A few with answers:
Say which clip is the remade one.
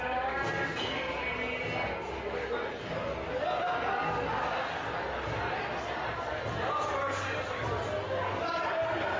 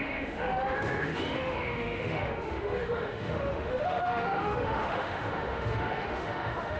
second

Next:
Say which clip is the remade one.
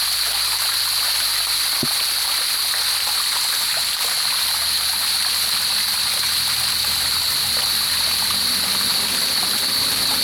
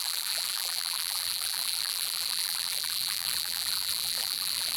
second